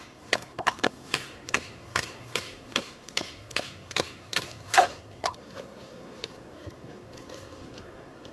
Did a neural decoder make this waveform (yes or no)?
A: yes